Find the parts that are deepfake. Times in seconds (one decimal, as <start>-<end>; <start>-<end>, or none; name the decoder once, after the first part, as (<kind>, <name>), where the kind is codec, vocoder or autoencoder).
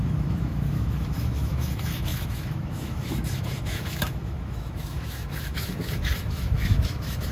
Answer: 0.0-7.3 (autoencoder, DAC-VAE)